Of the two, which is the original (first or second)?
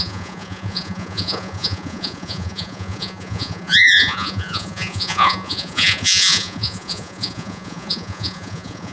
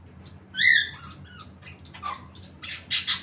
second